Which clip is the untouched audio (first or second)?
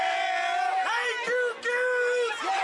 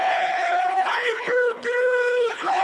first